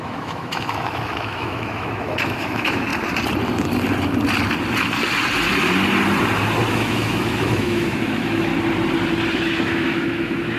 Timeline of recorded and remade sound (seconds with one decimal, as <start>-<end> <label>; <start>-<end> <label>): 0.0-2.9 remade; 2.9-6.7 recorded; 6.7-8.5 remade; 8.5-9.3 recorded; 9.3-10.6 remade